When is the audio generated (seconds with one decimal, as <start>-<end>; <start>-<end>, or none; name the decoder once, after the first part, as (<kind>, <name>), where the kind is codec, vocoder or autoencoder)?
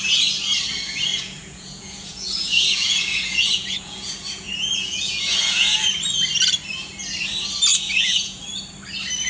1.1-6.0 (vocoder, Vocos); 7.7-8.5